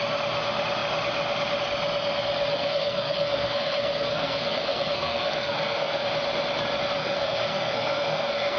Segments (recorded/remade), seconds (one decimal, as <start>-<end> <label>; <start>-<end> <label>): 0.0-2.5 recorded; 2.5-6.1 remade; 6.1-7.0 recorded; 7.0-8.6 remade